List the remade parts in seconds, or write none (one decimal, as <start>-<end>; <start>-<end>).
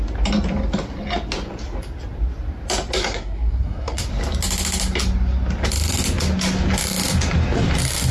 3.0-4.1